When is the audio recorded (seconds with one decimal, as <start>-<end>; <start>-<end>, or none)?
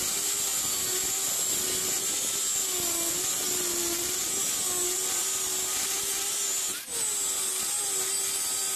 0.0-8.8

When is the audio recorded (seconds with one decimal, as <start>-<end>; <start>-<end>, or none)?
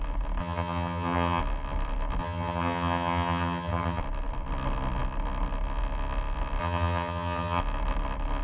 0.0-0.4; 1.4-2.2; 4.0-6.6; 7.6-8.4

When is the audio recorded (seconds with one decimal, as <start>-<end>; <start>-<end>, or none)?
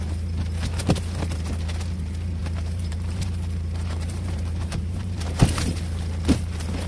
0.0-2.4; 5.4-6.9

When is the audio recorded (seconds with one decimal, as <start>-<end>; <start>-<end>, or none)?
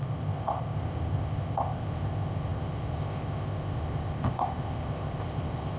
none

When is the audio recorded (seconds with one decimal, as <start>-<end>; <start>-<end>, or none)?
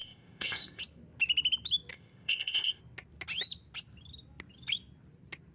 0.8-1.9; 2.8-5.5